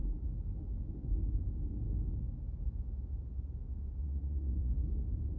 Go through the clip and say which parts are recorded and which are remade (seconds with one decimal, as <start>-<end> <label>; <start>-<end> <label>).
0.0-4.0 recorded; 4.0-4.7 remade; 4.7-5.4 recorded